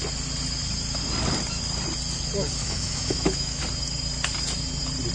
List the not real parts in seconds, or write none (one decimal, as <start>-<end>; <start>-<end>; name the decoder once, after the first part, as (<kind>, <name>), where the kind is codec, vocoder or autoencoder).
2.6-3.6 (autoencoder, DAC-VAE)